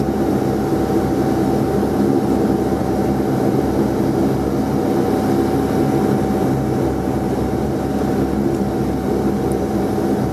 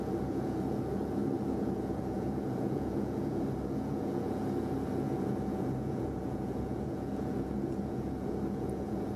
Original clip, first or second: first